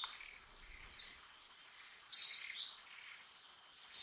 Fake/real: real